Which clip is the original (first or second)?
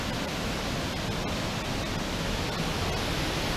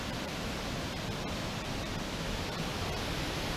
first